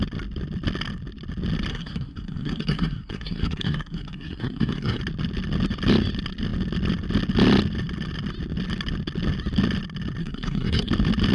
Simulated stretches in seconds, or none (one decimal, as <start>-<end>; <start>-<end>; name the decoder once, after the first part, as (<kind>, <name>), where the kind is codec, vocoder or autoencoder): 1.7-5.0 (codec, SNAC); 10.2-10.9